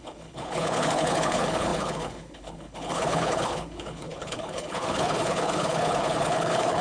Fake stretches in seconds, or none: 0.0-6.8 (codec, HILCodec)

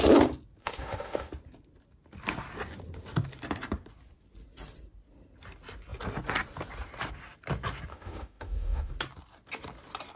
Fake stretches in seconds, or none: 0.6-1.3 (autoencoder, DAC-VAE); 7.9-8.9

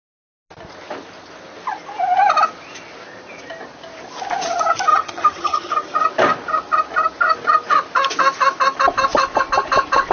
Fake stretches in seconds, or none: 4.9-5.7 (vocoder, HiFi-GAN)

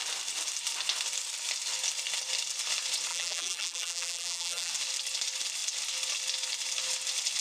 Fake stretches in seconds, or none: 3.1-4.7 (vocoder, BigVGAN v2)

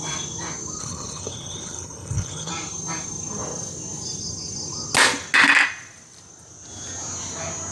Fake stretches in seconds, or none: 0.8-2.5 (codec, HILCodec)

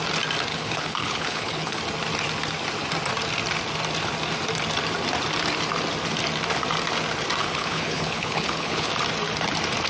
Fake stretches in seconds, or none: 0.5-1.8 (codec, HILCodec); 7.4-8.9